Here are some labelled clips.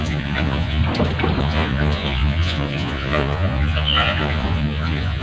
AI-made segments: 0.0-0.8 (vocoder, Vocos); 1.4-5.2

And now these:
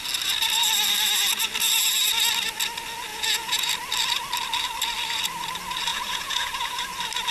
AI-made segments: 3.1-3.7 (vocoder, Vocos); 5.9-6.8

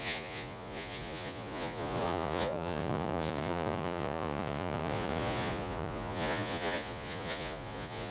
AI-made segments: 0.0-8.1 (vocoder, Vocos)

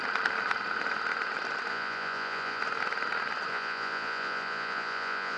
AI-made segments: 1.7-2.6 (vocoder, Vocos); 3.5-5.4

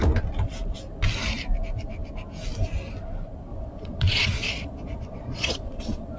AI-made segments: 3.5-6.2 (vocoder, Vocos)

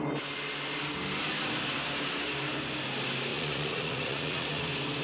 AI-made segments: 3.3-4.6 (vocoder, Vocos)

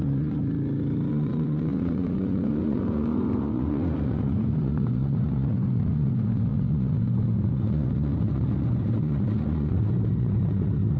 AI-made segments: 0.0-0.4 (vocoder, Vocos); 1.1-11.0

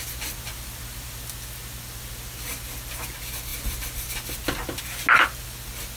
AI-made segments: none